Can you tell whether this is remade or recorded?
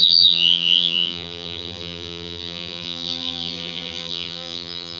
remade